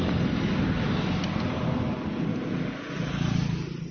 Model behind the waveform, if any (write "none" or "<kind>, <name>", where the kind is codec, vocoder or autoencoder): none